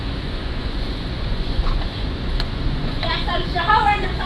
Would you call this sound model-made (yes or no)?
yes